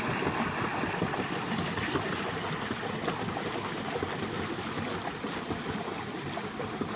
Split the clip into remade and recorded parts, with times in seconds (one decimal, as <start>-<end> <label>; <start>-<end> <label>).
0.0-7.0 recorded